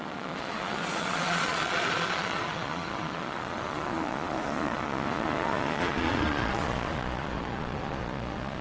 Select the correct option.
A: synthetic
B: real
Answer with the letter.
A